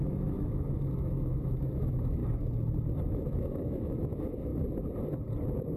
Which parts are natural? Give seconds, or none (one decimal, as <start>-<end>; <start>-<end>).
2.2-3.1; 4.5-5.8